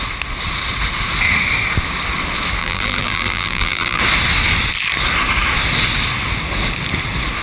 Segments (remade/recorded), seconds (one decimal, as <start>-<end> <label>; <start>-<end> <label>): 0.0-2.6 recorded; 2.6-4.0 remade; 4.0-7.4 recorded